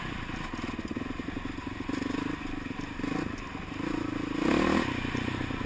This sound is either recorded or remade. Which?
recorded